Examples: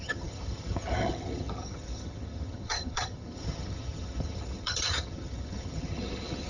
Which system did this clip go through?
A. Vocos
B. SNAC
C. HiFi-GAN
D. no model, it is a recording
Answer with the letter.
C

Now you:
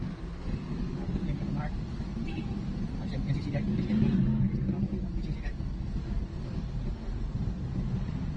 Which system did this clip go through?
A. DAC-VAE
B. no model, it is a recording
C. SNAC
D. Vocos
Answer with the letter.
B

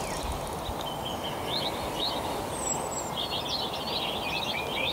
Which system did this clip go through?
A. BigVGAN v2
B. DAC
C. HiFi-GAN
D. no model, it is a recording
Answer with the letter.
D